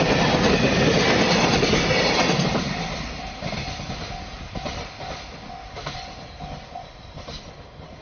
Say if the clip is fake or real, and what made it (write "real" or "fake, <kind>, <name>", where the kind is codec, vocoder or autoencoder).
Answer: real